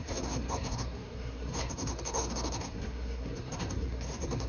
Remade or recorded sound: remade